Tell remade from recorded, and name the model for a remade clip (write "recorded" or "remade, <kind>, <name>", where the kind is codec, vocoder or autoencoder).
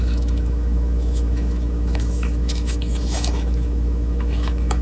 remade, autoencoder, DAC-VAE